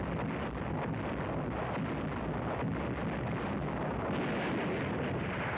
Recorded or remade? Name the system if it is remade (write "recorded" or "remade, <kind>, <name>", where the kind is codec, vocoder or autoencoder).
recorded